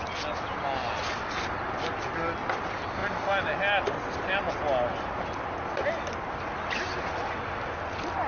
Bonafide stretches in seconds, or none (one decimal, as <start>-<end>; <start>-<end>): 0.0-8.3